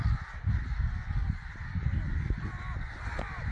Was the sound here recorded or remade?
recorded